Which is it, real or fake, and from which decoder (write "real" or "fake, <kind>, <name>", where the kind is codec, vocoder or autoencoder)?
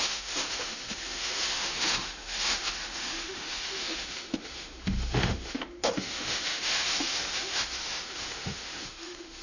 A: fake, autoencoder, DAC-VAE